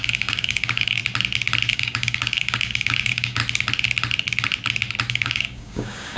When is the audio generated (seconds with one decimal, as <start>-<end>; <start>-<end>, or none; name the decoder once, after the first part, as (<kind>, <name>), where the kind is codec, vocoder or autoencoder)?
0.0-1.0 (codec, DAC); 1.7-3.4; 5.1-6.2